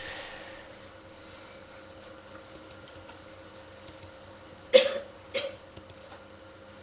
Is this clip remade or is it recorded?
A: recorded